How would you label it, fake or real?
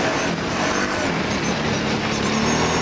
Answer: real